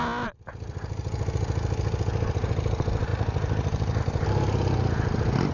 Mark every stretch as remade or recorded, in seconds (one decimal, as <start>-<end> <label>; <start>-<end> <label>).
0.0-5.5 recorded